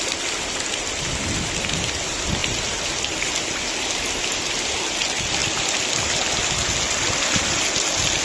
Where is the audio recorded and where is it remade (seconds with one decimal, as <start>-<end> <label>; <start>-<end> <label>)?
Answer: 0.0-8.2 recorded